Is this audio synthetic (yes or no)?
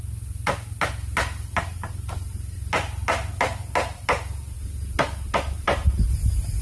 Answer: no